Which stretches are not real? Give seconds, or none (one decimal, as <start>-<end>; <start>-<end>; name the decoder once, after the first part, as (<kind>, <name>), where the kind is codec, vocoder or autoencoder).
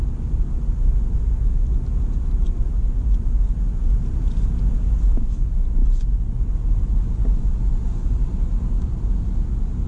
none